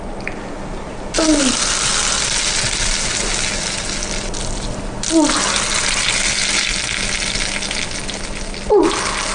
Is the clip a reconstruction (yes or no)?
no